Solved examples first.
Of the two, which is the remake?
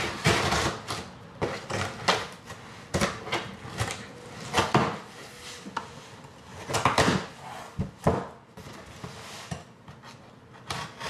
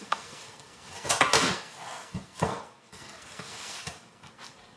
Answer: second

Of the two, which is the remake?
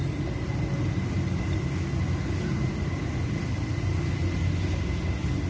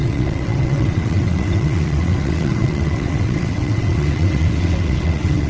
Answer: second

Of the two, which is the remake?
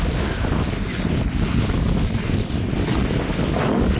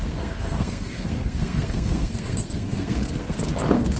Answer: second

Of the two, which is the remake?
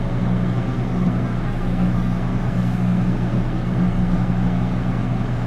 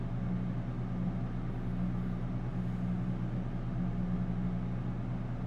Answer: first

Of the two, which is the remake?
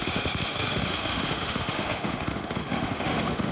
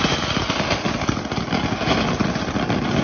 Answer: first